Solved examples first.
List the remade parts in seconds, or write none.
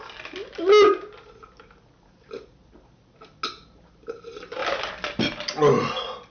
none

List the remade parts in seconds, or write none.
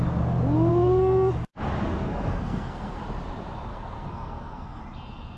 0.7-1.3 (codec, SNAC); 1.8-3.0; 3.7-4.8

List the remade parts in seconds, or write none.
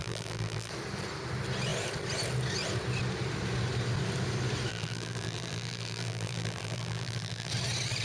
0.0-0.7 (vocoder, BigVGAN v2); 4.7-7.5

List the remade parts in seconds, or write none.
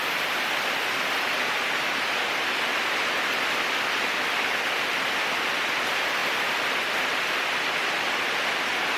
2.7-3.5 (vocoder, BigVGAN v2); 6.2-7.5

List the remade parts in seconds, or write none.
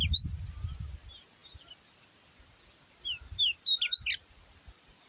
none